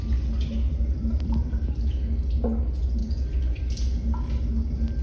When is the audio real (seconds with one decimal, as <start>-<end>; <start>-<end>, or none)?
0.0-3.0; 3.6-5.0